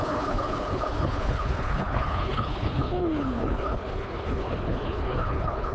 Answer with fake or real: fake